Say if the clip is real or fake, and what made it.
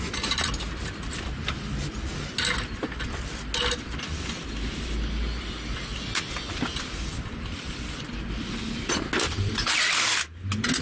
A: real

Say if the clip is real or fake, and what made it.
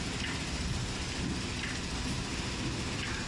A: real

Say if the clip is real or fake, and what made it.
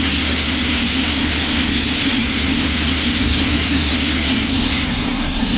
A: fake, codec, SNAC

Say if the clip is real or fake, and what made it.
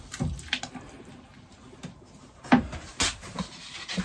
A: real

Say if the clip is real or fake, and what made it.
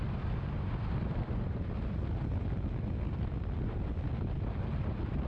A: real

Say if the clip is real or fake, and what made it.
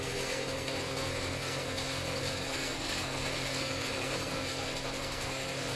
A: fake, codec, SNAC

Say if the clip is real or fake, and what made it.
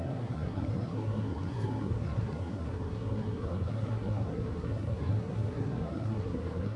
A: fake, codec, SNAC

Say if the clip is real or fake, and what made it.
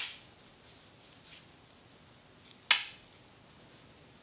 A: real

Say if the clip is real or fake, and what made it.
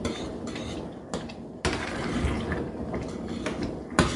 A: real